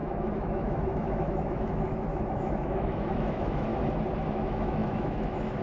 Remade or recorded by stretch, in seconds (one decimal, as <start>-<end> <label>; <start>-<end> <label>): 0.0-3.7 remade; 3.7-4.3 recorded; 4.3-5.6 remade